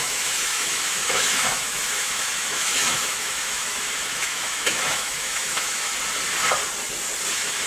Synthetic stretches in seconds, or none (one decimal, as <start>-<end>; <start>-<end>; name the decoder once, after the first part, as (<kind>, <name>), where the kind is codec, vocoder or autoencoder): 0.0-5.9 (autoencoder, DAC-VAE); 7.3-7.7